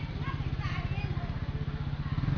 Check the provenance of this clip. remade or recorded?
recorded